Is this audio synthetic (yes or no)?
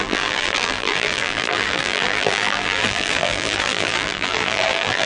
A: yes